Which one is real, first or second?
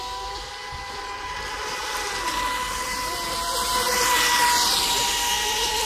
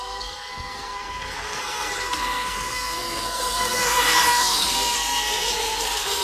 first